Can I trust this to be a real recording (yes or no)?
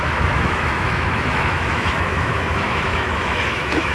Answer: no